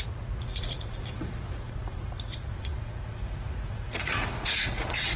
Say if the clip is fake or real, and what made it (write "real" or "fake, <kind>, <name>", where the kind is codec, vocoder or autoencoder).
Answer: fake, vocoder, Vocos